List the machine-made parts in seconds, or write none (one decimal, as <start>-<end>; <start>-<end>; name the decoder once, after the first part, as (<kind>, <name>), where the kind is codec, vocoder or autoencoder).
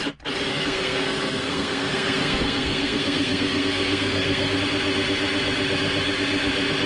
0.5-4.6 (codec, SNAC)